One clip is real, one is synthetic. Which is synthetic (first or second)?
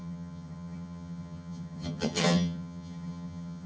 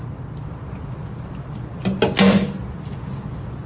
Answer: first